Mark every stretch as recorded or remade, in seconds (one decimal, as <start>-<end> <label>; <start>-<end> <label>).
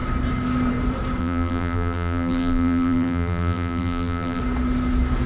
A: 0.0-1.2 recorded; 1.2-4.4 remade; 4.4-5.3 recorded